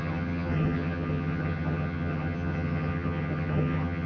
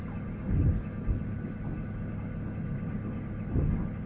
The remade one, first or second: first